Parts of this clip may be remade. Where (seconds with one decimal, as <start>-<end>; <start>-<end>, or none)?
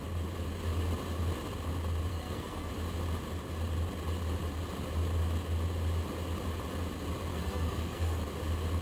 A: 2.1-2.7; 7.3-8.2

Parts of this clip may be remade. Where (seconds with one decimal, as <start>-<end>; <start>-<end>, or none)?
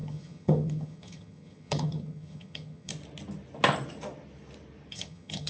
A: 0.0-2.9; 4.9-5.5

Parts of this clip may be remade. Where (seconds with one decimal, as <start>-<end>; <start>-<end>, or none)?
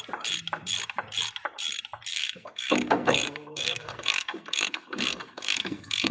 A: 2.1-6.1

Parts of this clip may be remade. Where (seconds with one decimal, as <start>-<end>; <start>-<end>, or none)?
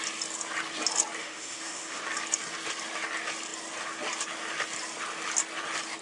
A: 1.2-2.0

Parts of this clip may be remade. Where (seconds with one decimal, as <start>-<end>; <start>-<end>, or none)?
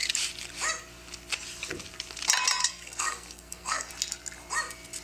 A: 2.6-3.9